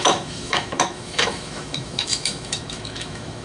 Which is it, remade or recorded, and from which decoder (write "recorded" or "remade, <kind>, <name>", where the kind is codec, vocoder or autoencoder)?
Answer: remade, autoencoder, DAC-VAE